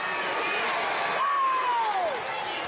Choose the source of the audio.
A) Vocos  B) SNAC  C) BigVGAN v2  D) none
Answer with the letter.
D